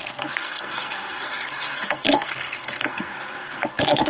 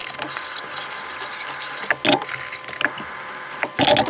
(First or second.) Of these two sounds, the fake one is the first